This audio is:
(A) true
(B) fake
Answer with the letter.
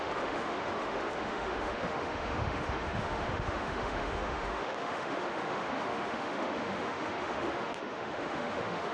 B